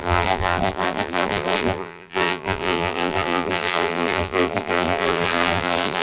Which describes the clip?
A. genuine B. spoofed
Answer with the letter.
B